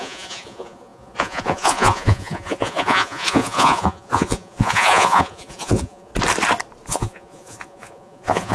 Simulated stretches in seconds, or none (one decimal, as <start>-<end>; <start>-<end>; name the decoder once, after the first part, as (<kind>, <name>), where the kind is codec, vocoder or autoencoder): 0.0-6.1 (vocoder, Vocos); 6.9-8.5